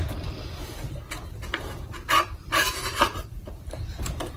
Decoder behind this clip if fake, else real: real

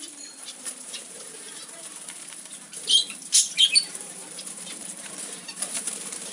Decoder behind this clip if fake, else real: fake, vocoder, BigVGAN v2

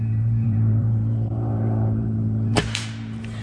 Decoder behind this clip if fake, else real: fake, vocoder, BigVGAN v2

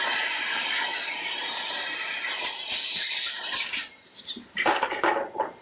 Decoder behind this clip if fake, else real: fake, vocoder, BigVGAN v2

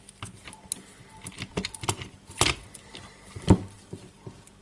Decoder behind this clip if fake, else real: real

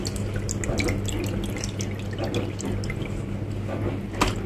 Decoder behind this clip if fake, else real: real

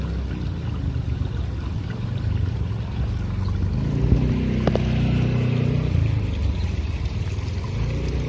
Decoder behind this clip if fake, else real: real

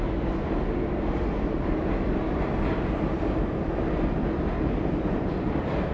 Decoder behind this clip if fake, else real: real